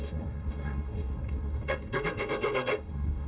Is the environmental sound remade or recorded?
remade